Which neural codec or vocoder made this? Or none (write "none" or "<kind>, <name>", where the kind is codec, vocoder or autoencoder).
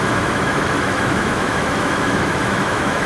autoencoder, DAC-VAE